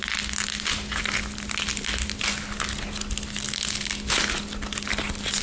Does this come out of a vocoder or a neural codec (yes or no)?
no